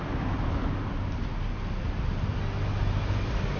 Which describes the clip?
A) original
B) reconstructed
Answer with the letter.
A